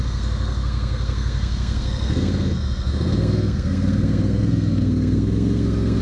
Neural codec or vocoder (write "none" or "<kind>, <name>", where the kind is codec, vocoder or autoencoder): codec, SNAC